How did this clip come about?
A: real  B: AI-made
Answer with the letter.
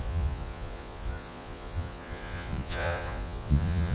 B